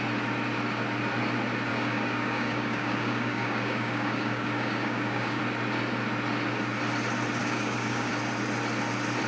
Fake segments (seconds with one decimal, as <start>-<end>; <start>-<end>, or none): 1.7-5.4; 7.4-8.1